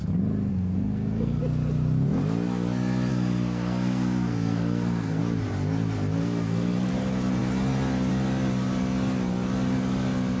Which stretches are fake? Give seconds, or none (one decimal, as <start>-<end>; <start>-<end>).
0.5-1.4; 3.1-5.2; 6.2-6.9